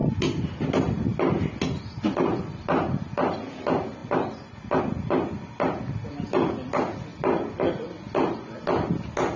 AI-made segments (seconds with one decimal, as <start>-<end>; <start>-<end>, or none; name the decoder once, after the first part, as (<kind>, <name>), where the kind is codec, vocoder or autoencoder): none